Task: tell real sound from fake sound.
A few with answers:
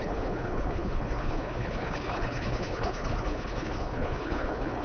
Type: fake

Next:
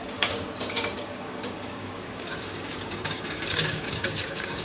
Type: fake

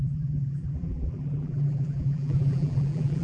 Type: fake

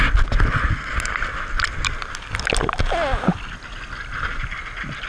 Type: real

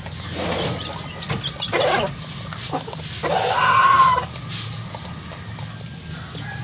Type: real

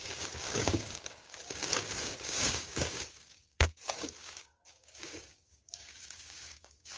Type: fake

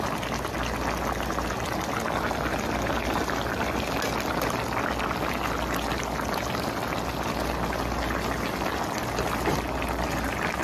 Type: real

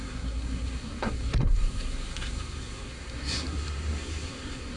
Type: fake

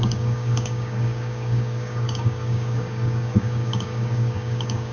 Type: fake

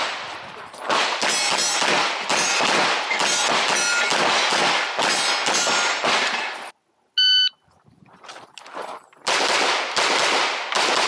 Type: real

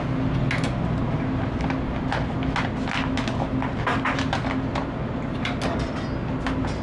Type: real